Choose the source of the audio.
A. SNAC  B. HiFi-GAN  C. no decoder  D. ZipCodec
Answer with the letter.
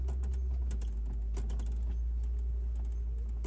C